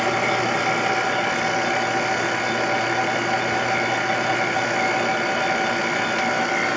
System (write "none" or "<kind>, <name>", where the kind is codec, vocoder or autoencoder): none